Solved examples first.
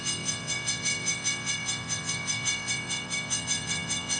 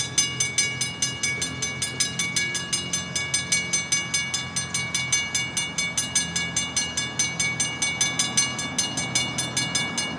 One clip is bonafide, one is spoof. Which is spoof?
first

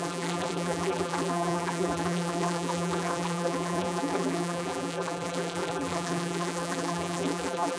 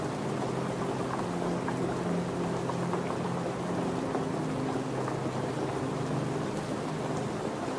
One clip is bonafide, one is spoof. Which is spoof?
first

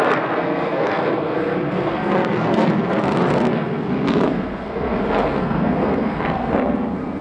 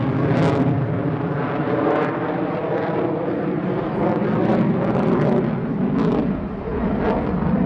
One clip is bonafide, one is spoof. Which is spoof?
first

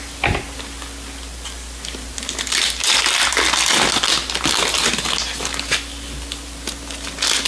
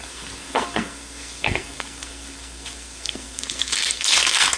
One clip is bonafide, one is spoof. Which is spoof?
second